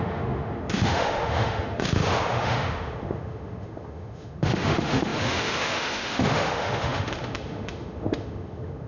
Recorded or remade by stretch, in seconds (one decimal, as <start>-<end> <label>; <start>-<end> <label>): 0.0-8.9 remade